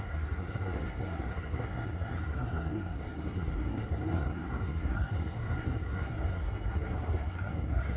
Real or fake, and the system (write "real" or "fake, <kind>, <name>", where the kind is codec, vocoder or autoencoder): fake, codec, SNAC